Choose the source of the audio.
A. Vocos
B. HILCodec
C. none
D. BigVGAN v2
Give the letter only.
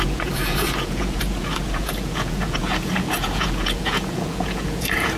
A